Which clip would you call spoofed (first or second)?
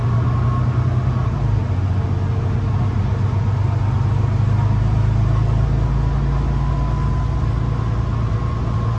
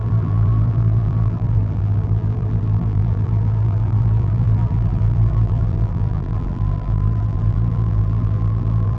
second